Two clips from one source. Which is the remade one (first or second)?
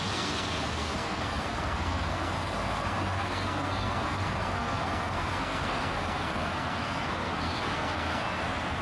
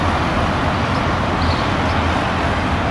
first